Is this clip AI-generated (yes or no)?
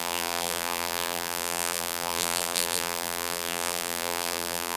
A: yes